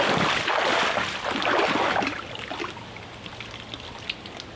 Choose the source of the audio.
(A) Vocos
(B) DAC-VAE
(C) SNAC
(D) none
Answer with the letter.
D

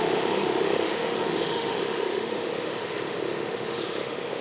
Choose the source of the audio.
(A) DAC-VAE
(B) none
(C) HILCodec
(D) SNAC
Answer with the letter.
A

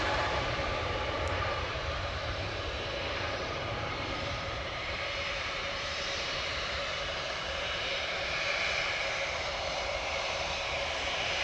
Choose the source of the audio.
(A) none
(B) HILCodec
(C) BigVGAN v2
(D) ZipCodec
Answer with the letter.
C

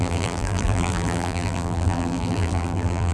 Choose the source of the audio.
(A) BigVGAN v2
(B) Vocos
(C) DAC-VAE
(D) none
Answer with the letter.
A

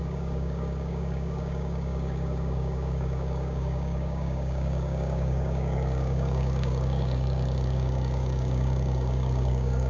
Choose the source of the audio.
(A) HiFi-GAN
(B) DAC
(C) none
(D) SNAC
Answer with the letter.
B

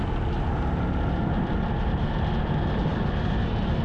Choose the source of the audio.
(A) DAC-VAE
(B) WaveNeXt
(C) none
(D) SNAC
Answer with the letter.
C